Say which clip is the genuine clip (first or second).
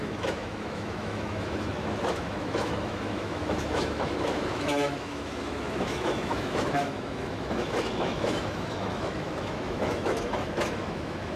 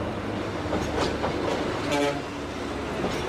second